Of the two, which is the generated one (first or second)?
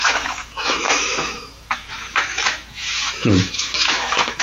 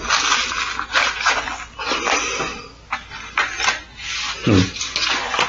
first